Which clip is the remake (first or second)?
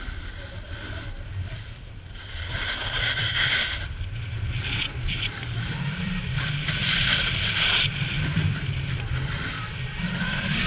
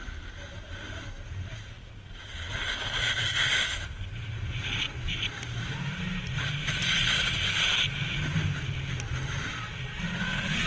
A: first